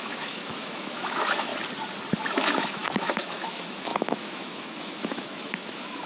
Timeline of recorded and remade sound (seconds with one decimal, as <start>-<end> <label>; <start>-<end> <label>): 0.0-1.5 remade; 1.5-2.3 recorded; 2.3-6.1 remade